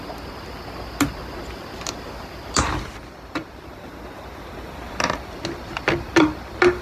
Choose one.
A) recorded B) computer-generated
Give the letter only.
A